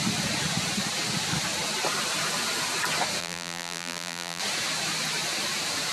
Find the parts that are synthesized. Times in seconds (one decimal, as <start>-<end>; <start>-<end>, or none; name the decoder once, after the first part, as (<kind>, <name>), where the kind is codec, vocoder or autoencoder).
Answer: 3.2-4.4 (vocoder, BigVGAN v2)